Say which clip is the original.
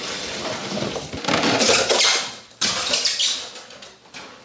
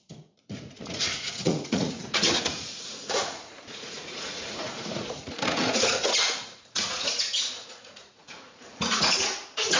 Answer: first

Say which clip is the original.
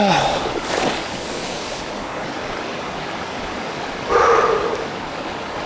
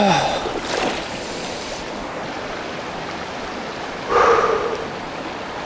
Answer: second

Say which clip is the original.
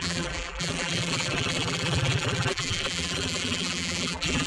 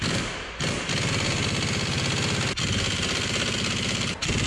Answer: second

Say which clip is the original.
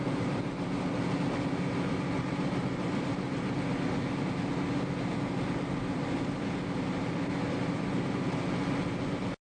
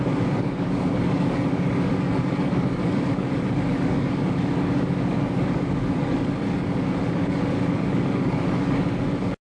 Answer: first